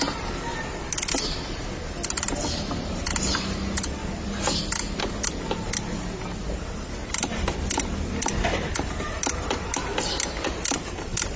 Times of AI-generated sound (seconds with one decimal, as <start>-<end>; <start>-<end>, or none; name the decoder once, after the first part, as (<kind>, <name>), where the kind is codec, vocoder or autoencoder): none